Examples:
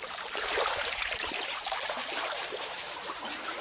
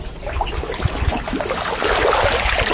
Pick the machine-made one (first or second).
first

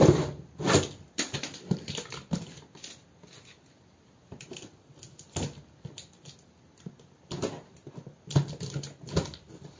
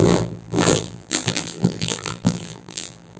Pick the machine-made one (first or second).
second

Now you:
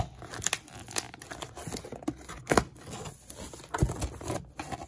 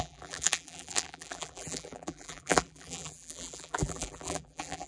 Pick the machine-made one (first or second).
second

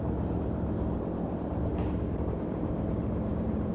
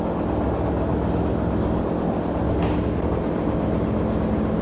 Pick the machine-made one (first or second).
first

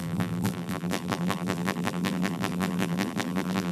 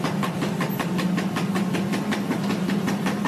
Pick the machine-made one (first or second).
first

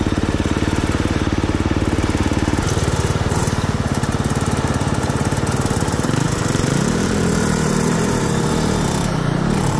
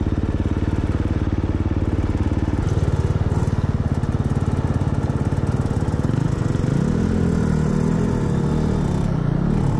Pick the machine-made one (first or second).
first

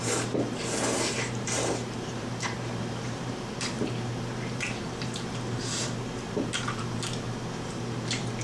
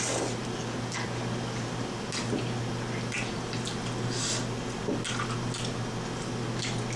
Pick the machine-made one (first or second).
first